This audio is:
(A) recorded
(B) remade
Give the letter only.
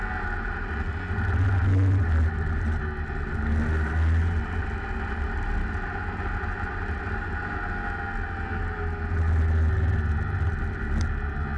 A